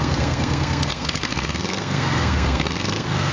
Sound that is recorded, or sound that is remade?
remade